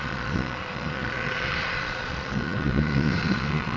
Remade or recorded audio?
remade